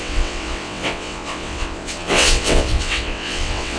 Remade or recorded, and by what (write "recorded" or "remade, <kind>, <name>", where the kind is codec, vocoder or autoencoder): remade, vocoder, WaveNeXt